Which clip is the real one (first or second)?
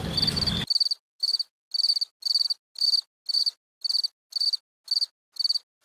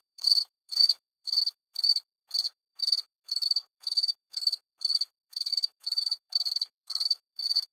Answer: first